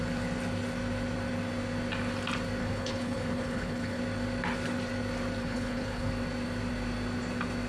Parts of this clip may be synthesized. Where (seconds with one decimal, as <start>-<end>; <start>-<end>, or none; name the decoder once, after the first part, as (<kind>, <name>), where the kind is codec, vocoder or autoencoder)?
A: 2.6-4.0 (codec, HILCodec); 5.4-6.1